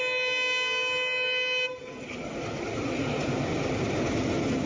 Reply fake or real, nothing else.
real